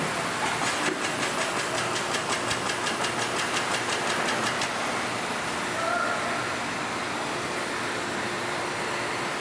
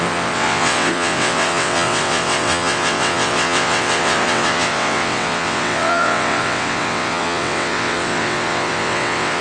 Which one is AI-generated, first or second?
second